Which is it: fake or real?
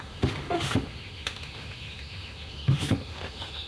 fake